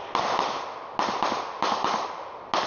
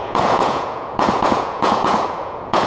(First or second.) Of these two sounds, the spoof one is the second